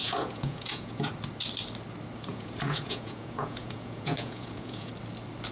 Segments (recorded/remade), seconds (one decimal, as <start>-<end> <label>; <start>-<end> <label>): 0.0-1.1 remade; 1.1-2.3 recorded; 2.3-4.9 remade; 4.9-5.5 recorded